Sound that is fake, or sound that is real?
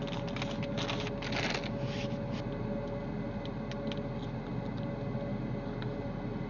real